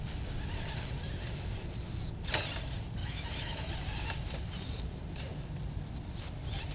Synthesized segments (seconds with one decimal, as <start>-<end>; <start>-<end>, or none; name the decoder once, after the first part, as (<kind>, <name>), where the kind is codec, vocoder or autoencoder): 3.0-3.7 (autoencoder, DAC-VAE)